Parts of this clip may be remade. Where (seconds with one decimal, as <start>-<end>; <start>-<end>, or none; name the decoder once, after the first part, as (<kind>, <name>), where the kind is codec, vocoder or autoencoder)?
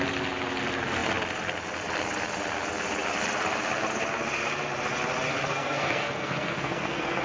5.5-7.2 (codec, SNAC)